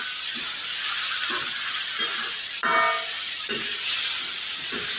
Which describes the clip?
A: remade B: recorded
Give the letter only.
B